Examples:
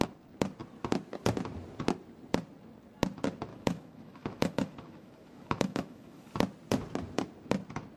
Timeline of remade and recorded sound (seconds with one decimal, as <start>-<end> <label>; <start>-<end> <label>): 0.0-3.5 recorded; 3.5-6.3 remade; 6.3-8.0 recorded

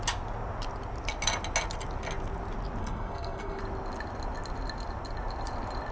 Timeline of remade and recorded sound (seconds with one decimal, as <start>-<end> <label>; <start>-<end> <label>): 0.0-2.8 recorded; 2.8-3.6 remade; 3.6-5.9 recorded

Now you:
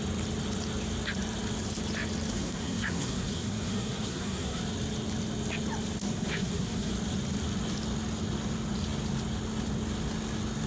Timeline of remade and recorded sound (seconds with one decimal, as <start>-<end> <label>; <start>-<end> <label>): 0.0-2.3 recorded; 2.3-4.6 remade; 4.6-6.0 recorded; 6.0-6.9 remade; 6.9-10.7 recorded

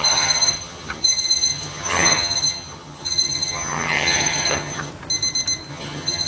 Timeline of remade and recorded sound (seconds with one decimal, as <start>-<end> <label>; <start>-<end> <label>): 0.0-4.9 remade; 4.9-5.7 recorded; 5.7-6.3 remade

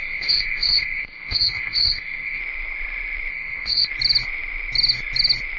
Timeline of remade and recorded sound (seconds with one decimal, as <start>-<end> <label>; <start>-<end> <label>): 0.0-2.4 remade; 2.4-3.3 recorded; 3.3-3.9 remade; 3.9-5.6 recorded